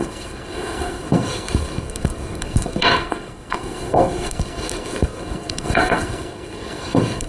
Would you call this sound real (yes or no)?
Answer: no